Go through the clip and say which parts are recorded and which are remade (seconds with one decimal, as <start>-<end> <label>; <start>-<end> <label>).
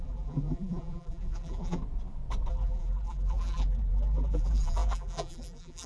0.0-1.8 remade; 1.8-2.5 recorded; 2.5-5.9 remade